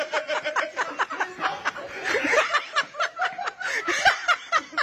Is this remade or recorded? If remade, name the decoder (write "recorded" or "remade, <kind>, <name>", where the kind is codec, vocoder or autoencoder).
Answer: recorded